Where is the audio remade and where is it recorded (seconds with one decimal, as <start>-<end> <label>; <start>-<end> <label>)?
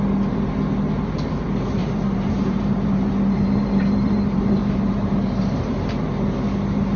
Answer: 0.0-1.8 recorded; 1.8-5.9 remade; 5.9-7.0 recorded